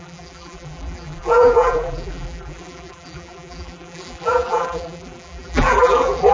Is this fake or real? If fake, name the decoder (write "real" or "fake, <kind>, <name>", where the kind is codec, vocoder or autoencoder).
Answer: fake, vocoder, BigVGAN v2